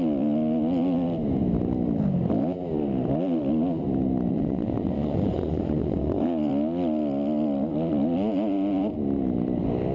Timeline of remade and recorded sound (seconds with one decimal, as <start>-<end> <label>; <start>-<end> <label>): 0.0-4.3 recorded; 4.3-6.5 remade; 6.5-9.9 recorded